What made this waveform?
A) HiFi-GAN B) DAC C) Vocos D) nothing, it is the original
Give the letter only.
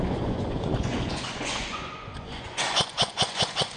C